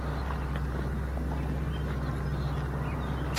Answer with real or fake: real